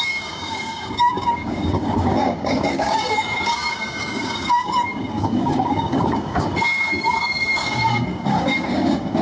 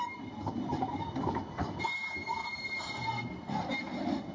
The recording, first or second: second